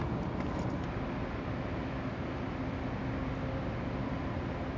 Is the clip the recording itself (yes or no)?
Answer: yes